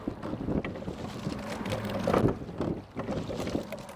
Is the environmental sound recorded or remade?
recorded